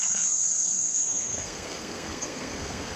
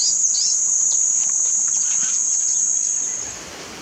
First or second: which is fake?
first